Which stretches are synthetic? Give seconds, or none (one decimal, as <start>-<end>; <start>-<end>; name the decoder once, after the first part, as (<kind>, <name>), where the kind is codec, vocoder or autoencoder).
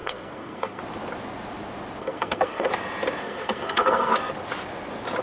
0.0-0.8 (codec, SNAC); 2.0-2.7; 3.2-4.1